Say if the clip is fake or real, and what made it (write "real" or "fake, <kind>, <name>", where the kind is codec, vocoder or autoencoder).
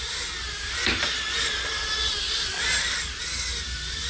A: real